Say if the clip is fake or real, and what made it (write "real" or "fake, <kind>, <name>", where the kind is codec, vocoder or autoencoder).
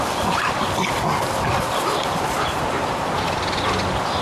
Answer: real